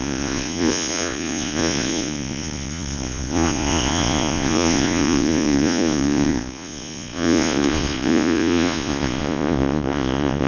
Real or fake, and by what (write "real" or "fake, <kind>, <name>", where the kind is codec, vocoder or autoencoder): fake, vocoder, Vocos